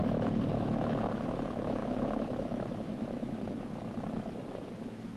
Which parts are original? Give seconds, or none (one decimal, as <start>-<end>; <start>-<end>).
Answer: 0.0-0.5